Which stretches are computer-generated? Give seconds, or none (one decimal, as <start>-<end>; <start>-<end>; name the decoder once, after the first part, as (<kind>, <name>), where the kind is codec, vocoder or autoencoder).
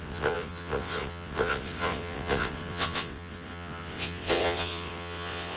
0.0-5.6 (vocoder, WaveNeXt)